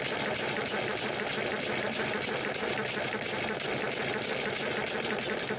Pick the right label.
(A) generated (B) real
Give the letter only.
B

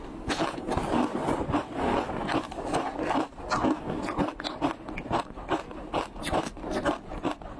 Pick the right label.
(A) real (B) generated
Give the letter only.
A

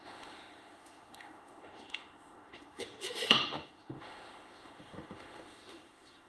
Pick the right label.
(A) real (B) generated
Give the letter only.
B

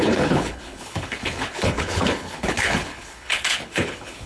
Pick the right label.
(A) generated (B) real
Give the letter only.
A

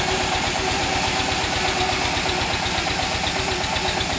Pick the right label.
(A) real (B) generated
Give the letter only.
A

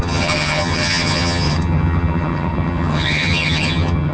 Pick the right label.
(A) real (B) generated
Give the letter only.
B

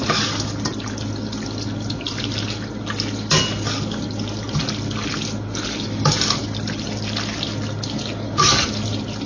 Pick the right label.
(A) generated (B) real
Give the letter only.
B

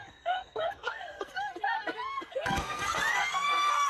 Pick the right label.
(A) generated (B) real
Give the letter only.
A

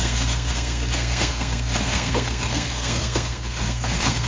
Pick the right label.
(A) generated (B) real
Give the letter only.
A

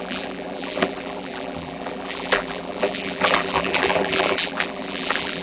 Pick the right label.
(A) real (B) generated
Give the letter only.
B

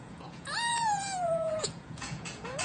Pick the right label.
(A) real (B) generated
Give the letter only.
B